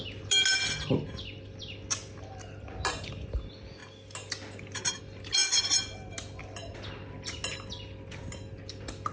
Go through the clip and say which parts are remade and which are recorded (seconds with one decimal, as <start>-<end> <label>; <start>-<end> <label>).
0.0-9.1 recorded